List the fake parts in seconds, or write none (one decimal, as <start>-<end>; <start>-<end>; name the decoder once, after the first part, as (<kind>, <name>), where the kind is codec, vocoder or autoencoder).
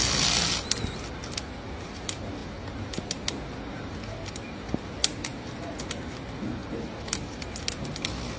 none